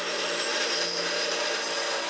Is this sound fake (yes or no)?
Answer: no